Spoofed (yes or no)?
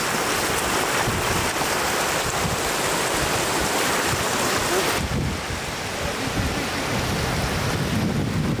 no